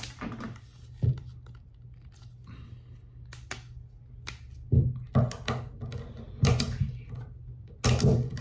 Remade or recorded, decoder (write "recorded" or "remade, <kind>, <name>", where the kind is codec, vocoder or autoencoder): recorded